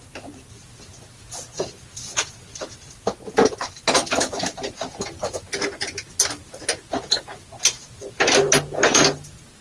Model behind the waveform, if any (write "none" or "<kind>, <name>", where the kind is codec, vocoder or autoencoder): none